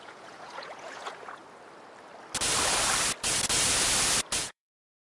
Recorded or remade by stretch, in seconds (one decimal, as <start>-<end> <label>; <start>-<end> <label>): 0.0-1.4 remade; 1.4-4.4 recorded; 4.4-5.0 remade